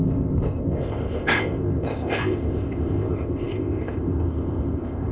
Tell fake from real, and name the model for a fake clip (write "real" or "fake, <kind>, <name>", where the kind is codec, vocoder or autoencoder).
fake, codec, ZipCodec